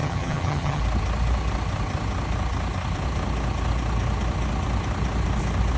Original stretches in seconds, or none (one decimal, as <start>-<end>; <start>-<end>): 0.8-5.8